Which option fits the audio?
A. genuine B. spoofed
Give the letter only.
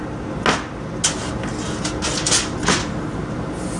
A